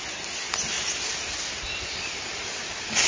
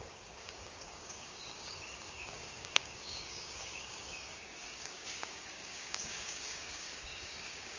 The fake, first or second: second